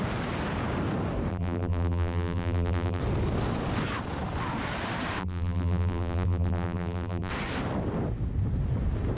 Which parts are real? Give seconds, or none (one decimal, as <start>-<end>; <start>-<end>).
0.0-1.3; 3.0-5.2; 7.3-9.2